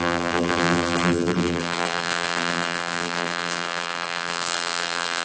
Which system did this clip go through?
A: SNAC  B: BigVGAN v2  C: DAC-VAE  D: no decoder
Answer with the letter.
B